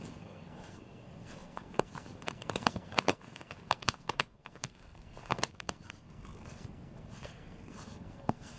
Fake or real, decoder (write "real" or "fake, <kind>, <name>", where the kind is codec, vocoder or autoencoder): fake, codec, SNAC